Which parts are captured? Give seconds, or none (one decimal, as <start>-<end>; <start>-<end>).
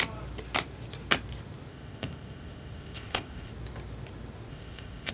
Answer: 0.0-1.7; 3.5-4.5